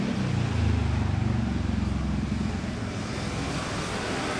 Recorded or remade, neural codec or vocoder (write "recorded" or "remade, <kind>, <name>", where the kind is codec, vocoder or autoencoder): recorded